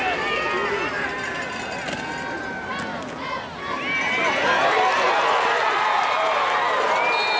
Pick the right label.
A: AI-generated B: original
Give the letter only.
B